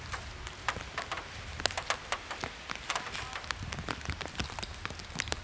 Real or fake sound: real